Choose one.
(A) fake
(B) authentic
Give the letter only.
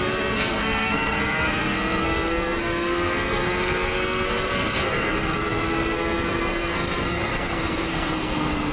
A